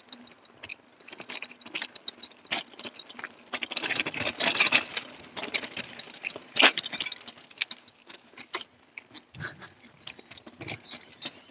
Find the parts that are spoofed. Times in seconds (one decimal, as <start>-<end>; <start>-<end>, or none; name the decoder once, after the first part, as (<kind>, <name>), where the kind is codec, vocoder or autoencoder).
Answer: none

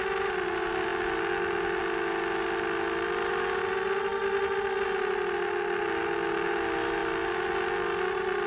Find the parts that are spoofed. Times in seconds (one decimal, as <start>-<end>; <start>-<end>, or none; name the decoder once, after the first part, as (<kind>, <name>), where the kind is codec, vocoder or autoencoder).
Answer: none

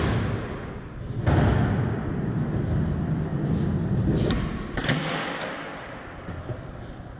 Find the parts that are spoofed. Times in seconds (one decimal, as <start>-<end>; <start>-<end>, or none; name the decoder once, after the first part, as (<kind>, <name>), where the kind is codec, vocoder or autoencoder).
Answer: none